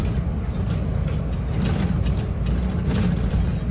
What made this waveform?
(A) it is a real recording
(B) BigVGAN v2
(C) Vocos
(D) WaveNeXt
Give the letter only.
A